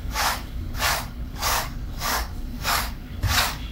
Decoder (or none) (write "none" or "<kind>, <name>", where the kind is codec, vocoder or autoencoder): codec, DAC